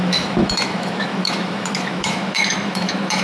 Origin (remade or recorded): remade